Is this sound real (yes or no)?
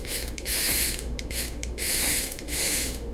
no